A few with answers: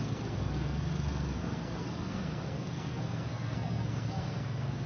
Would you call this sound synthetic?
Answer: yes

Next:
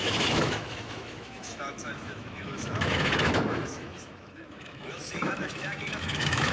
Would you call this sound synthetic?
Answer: yes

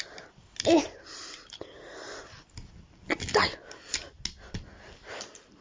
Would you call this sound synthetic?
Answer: no